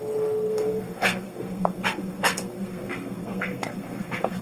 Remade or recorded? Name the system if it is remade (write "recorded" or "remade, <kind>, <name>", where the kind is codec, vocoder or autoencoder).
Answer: remade, codec, SNAC